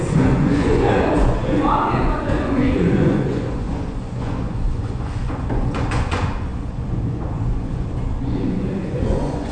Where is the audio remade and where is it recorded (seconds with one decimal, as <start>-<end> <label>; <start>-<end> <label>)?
0.0-9.5 remade